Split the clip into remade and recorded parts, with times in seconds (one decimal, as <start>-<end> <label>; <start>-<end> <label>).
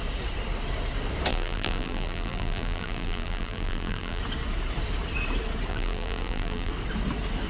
0.0-1.3 recorded; 1.3-4.2 remade; 4.2-5.7 recorded; 5.7-6.7 remade; 6.7-7.5 recorded